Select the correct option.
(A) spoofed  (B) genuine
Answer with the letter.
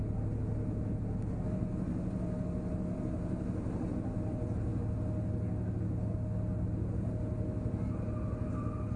B